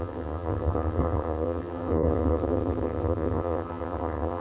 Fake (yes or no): yes